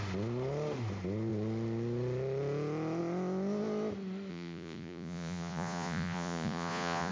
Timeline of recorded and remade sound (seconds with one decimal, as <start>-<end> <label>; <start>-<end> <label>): 0.0-4.3 recorded; 4.3-7.1 remade